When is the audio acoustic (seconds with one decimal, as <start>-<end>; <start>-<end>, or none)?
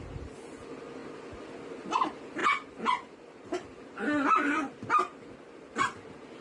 0.0-6.4